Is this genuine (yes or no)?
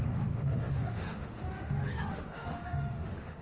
no